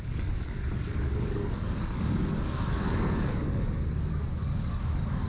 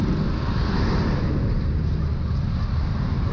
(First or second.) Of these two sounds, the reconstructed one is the first